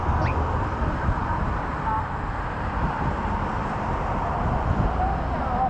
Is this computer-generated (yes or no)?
no